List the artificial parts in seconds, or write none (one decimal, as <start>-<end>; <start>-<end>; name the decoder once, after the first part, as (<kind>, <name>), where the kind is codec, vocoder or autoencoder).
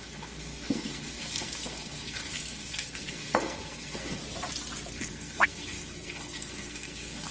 0.0-4.2 (codec, SNAC); 4.9-7.3